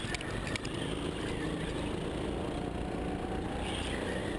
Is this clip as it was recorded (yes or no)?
yes